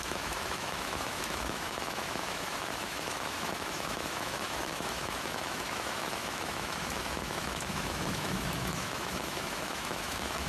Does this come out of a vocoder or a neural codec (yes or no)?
yes